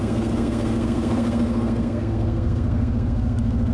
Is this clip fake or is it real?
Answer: fake